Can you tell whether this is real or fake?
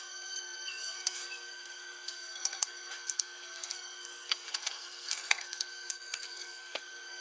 fake